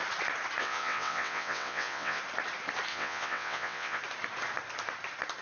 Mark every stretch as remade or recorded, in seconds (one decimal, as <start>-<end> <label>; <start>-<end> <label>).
0.0-0.6 recorded; 0.6-2.2 remade; 2.2-2.9 recorded; 2.9-4.0 remade; 4.0-5.4 recorded